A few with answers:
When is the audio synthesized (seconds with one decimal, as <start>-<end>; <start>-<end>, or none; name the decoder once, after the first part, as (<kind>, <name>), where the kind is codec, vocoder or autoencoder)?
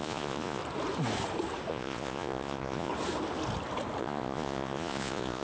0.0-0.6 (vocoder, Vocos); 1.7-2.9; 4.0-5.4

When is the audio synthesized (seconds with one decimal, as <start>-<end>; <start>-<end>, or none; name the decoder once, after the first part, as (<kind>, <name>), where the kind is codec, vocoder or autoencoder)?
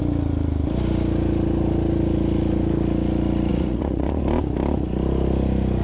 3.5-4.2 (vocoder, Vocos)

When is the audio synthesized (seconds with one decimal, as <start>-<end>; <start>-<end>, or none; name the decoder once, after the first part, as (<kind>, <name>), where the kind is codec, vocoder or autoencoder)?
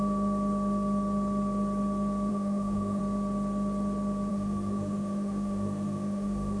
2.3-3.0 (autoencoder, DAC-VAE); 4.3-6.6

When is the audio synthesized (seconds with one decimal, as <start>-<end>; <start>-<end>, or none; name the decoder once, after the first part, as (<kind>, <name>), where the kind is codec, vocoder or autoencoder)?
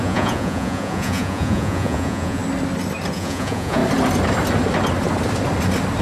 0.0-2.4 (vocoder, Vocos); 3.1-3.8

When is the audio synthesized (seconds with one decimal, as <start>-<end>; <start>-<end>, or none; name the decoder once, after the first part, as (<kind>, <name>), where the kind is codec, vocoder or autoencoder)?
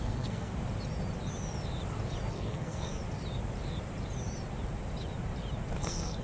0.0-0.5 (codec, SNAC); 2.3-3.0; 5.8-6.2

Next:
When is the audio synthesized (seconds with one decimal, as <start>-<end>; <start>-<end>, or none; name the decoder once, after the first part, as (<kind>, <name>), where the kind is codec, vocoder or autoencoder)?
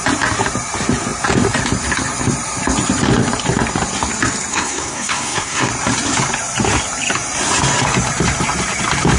4.5-5.7 (codec, SNAC)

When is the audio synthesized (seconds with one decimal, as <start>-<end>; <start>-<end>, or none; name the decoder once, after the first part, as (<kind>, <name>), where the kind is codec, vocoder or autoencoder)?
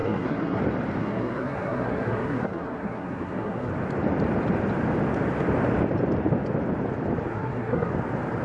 0.0-0.6 (codec, SNAC); 1.0-3.7; 7.3-7.9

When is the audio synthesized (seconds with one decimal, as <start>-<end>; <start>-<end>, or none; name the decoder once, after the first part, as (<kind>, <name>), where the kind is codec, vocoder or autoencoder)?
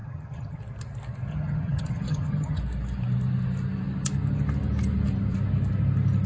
0.0-0.6 (vocoder, HiFi-GAN); 1.3-2.6